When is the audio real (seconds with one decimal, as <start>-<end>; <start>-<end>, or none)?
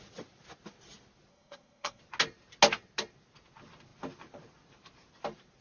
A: 0.0-1.3; 2.0-5.6